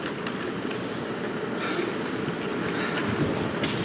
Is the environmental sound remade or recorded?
recorded